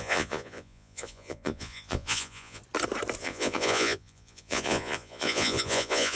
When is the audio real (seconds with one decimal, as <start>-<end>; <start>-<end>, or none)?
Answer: 2.6-3.2